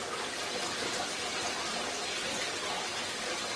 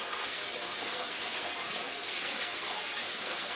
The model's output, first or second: second